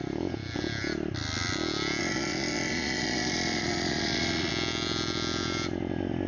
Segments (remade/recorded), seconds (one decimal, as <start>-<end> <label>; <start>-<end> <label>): 0.0-2.0 recorded; 2.0-4.5 remade; 4.5-6.3 recorded